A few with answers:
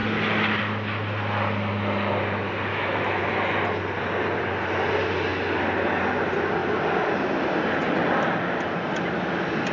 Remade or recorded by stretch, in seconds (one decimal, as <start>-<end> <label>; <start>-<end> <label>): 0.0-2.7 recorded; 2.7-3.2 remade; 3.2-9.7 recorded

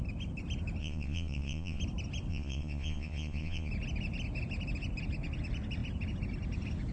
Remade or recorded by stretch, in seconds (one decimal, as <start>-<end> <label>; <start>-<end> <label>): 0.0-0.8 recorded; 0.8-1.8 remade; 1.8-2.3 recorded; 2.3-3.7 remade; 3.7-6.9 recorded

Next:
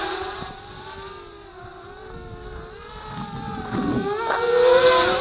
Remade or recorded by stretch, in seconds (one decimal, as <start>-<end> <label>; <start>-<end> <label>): 0.0-5.2 recorded

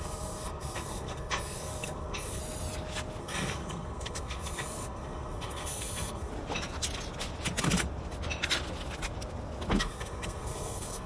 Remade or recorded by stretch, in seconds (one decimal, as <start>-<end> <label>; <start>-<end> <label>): 0.0-2.4 remade; 2.4-3.2 recorded; 3.2-6.3 remade; 6.3-9.8 recorded; 9.8-11.1 remade